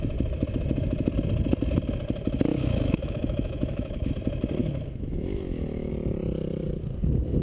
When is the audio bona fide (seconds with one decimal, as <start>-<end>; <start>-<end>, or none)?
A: 0.0-2.5; 4.1-4.6; 5.9-7.4